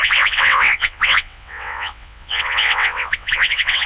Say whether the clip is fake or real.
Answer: fake